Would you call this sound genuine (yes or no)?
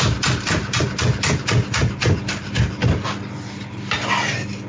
yes